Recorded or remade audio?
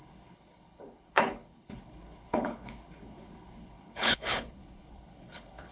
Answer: remade